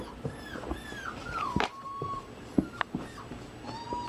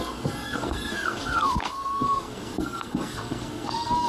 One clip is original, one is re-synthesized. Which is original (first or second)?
first